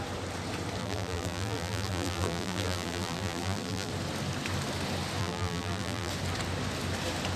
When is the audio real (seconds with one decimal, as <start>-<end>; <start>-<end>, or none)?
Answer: 0.0-0.8; 3.9-5.2; 6.1-7.4